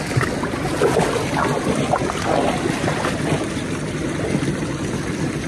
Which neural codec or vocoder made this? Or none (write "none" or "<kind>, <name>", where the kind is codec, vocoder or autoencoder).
none